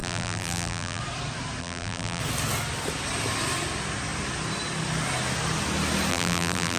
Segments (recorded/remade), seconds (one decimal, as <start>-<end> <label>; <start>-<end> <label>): 0.0-1.0 remade; 1.0-1.6 recorded; 1.6-2.2 remade; 2.2-6.1 recorded; 6.1-6.8 remade